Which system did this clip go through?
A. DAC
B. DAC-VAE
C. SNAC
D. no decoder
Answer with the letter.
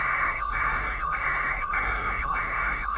C